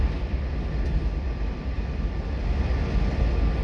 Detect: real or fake real